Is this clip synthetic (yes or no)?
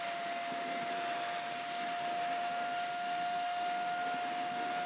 no